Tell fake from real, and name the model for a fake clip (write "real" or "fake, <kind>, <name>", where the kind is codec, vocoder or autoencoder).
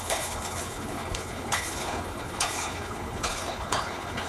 fake, codec, HILCodec